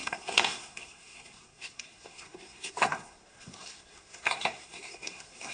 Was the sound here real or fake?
fake